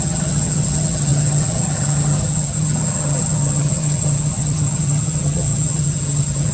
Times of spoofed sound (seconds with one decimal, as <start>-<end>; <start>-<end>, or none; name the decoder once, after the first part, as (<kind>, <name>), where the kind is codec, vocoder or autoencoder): 0.0-6.5 (vocoder, HiFi-GAN)